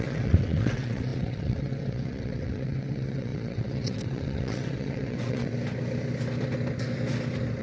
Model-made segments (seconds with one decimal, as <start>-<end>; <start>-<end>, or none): 0.0-5.5